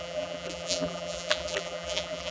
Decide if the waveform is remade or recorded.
remade